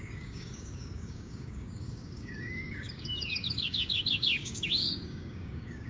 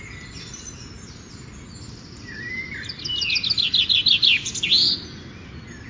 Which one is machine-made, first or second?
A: first